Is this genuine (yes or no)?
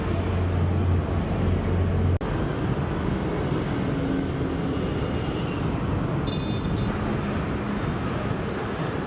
yes